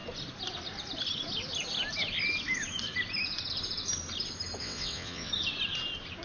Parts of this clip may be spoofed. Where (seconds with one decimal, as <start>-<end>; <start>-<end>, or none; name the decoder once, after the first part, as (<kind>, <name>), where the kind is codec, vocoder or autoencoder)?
4.6-5.3 (vocoder, WaveNeXt)